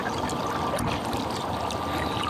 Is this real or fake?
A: real